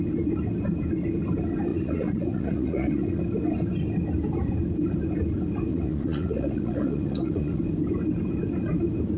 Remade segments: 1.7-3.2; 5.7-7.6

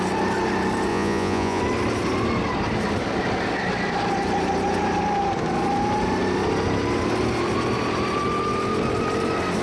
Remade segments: 0.9-1.6

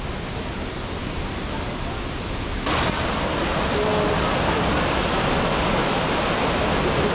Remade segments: none

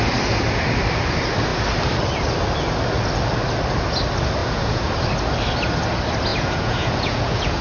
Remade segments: 4.4-4.9; 6.3-7.6

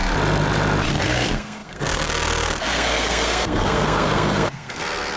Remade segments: 0.9-5.2

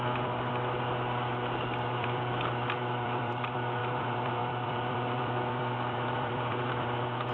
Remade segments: 0.0-0.5; 1.9-7.3

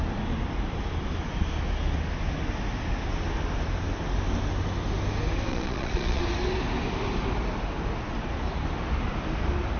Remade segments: 5.5-6.2

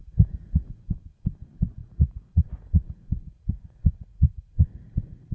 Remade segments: 0.0-0.9; 1.8-5.3